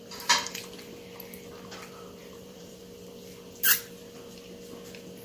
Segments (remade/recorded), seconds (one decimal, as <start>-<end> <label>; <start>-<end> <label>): 0.0-2.2 recorded; 2.2-2.8 remade; 2.8-5.2 recorded